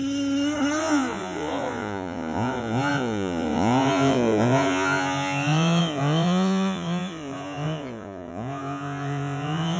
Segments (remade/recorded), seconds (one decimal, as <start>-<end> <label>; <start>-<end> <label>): 0.0-0.8 recorded; 0.8-9.8 remade